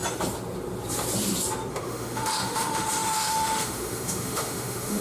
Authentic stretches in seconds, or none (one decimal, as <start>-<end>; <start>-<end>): 0.0-1.7

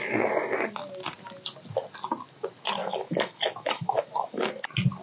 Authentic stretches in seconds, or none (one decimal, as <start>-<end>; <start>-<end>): 0.0-2.8; 4.5-5.0

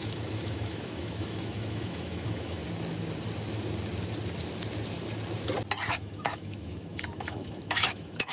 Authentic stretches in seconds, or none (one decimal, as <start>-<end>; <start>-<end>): 2.6-5.9

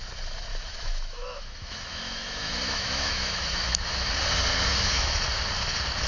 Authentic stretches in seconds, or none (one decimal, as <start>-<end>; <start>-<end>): 0.0-0.5; 4.1-4.7; 5.2-6.1

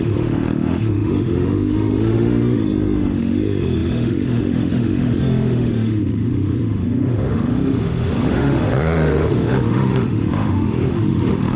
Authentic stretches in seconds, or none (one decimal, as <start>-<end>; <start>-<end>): none

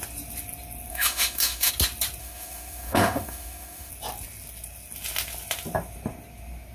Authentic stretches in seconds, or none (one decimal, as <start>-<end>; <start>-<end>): 0.0-0.9; 1.7-2.2; 3.9-6.7

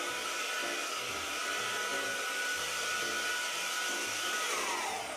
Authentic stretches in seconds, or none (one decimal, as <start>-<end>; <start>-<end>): 0.0-5.2